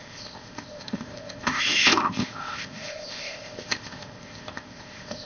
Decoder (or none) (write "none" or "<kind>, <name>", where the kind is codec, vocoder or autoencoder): codec, ZipCodec